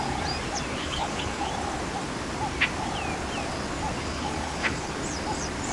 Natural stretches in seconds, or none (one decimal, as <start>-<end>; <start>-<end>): 0.0-0.8; 1.5-4.0; 4.9-5.7

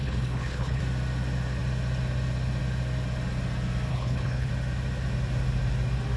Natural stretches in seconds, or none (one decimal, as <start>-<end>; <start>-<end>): 0.8-3.9; 4.5-6.2

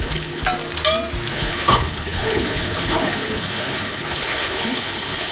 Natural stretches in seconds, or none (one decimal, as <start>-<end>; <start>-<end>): 0.4-1.3

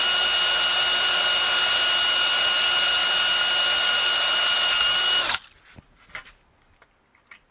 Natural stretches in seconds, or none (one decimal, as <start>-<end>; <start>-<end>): 0.0-7.5

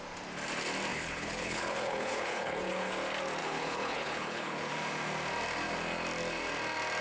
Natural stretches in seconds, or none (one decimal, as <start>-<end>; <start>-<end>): 0.0-0.9; 2.9-3.4; 4.7-7.0